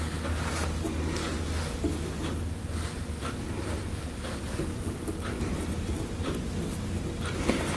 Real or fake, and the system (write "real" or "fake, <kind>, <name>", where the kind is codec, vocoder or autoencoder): real